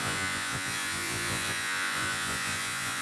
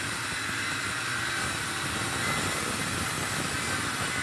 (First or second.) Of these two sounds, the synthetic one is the first